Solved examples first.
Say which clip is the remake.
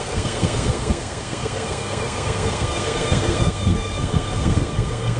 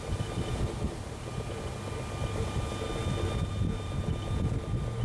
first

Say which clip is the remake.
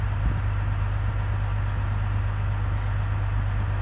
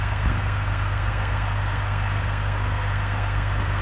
second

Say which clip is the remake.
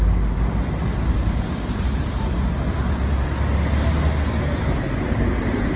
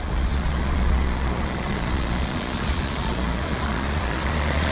second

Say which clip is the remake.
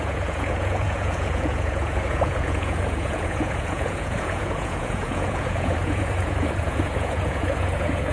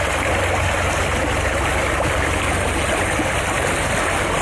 first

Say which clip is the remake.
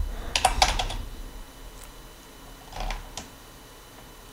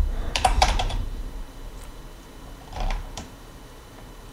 second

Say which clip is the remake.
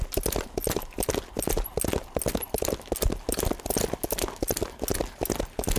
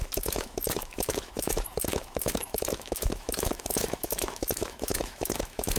second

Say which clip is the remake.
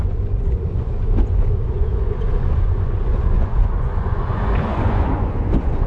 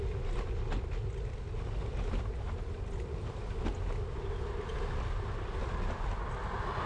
first